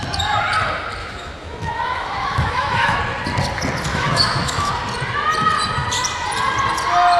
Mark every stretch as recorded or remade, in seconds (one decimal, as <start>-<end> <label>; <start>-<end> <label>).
0.0-1.0 recorded; 1.0-3.0 remade; 3.0-3.9 recorded; 3.9-4.7 remade; 4.7-7.2 recorded